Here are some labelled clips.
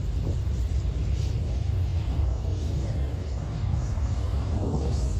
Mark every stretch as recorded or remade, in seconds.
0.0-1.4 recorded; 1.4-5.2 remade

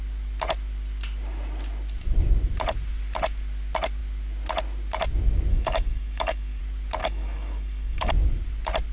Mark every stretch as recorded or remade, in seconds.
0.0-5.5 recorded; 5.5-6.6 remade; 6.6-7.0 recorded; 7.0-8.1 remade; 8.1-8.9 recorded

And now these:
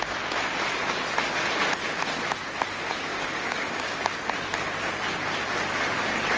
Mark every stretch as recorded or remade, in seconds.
0.0-3.1 recorded; 3.1-4.2 remade; 4.2-6.4 recorded

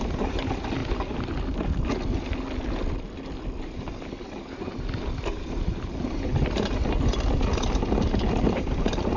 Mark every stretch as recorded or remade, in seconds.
0.0-9.2 recorded

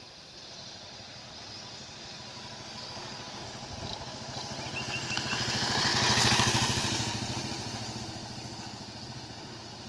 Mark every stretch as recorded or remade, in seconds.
0.0-2.3 recorded; 2.3-3.4 remade; 3.4-9.9 recorded